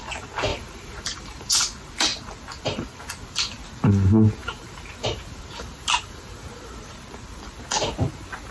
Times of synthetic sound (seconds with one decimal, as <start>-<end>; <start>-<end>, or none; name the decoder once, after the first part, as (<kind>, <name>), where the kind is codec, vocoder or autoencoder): 0.5-1.5 (vocoder, BigVGAN v2); 4.4-6.9

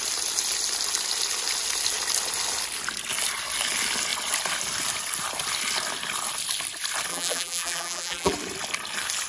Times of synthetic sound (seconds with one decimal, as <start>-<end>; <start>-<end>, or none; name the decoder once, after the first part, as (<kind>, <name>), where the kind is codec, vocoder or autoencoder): 7.1-8.3 (vocoder, BigVGAN v2)

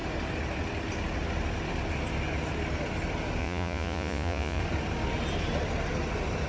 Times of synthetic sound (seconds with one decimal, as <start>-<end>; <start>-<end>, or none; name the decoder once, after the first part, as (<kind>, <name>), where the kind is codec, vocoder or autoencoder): 3.4-4.6 (vocoder, Vocos)

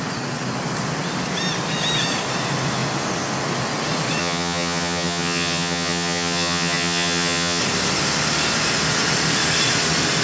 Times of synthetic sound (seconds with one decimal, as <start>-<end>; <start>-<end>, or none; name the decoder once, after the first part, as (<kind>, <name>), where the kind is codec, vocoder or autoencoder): 4.2-7.6 (vocoder, HiFi-GAN)

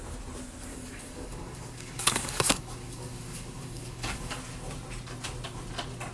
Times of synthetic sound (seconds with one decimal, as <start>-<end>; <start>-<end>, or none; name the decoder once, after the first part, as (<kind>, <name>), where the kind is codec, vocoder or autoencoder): 0.7-4.4 (codec, DAC)